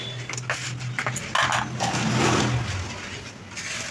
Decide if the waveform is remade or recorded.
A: recorded